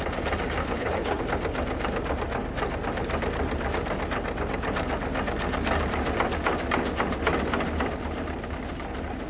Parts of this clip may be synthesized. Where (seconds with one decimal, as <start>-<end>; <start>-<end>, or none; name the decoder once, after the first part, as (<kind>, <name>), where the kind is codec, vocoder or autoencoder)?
0.6-1.2 (codec, HILCodec)